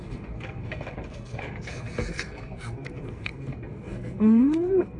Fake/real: fake